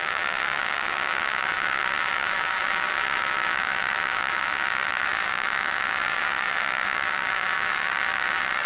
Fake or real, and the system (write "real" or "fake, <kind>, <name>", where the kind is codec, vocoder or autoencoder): fake, vocoder, WaveNeXt